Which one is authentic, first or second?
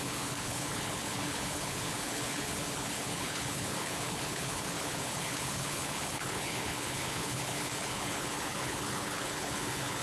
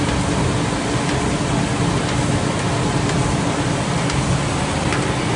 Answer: second